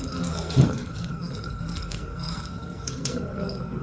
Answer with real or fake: fake